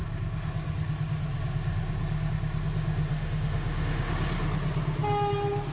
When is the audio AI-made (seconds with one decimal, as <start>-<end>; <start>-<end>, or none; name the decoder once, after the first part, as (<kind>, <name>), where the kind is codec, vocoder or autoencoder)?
3.1-4.1 (autoencoder, DAC-VAE)